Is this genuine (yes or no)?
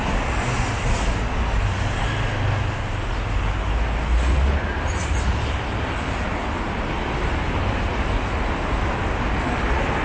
yes